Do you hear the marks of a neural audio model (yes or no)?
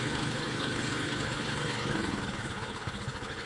yes